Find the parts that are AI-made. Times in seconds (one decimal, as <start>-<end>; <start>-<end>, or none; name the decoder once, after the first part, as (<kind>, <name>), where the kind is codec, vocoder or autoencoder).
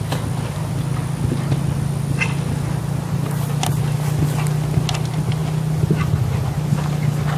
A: none